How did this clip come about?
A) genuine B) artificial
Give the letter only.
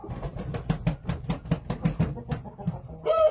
A